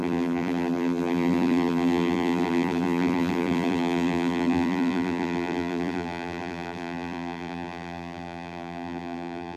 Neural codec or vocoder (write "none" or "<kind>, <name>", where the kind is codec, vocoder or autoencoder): vocoder, BigVGAN v2